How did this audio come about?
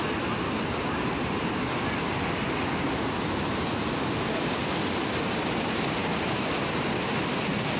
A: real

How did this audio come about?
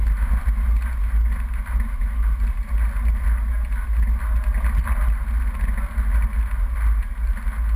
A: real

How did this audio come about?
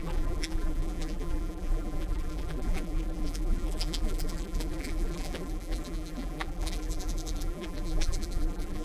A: fake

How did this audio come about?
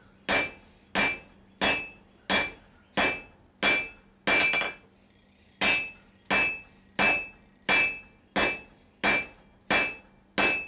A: real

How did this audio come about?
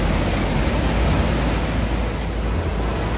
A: real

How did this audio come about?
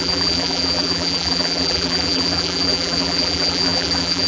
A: fake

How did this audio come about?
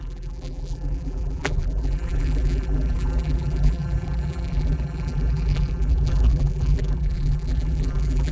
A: fake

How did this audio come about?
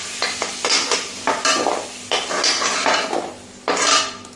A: real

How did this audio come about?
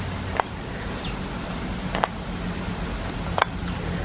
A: real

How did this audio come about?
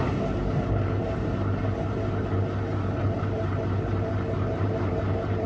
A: fake